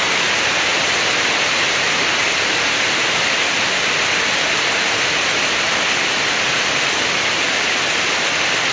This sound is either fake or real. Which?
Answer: real